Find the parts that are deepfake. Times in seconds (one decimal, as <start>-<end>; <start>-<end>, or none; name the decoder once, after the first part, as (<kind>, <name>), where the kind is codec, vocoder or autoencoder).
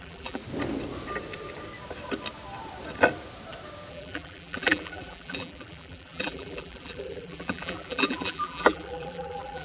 0.0-0.4 (vocoder, BigVGAN v2); 3.9-9.6